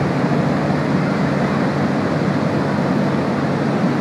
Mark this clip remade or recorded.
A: recorded